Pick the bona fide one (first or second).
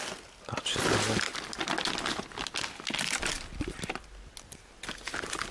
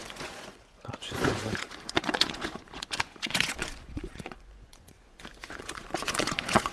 first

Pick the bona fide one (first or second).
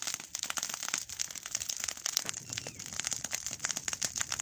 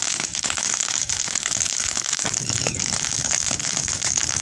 first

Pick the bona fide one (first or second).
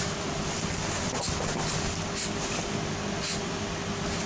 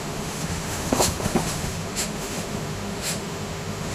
first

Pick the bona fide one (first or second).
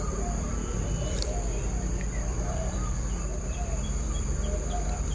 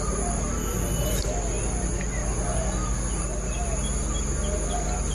second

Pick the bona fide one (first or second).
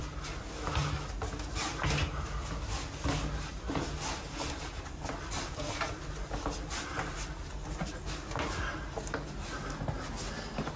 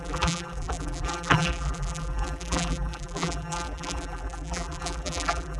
first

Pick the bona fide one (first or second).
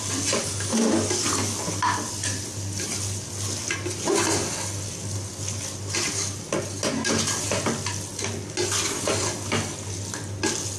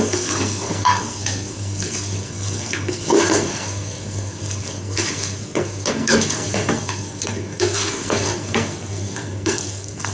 first